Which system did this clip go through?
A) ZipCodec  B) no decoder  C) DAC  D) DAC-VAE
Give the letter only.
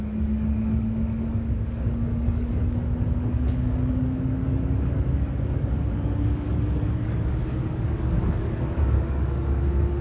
C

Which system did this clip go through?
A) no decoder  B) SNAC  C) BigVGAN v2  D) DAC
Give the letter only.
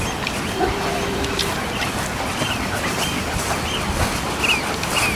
A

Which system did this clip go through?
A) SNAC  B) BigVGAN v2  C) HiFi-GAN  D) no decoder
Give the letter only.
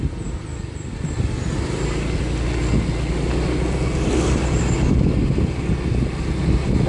D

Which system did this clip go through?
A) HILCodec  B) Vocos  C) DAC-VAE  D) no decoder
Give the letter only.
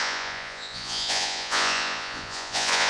B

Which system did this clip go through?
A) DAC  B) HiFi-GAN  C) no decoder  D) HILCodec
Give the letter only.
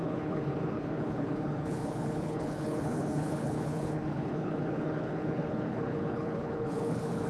D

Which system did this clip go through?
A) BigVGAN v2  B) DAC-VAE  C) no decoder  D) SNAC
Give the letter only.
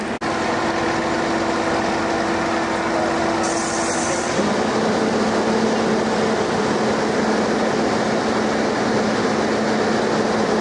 C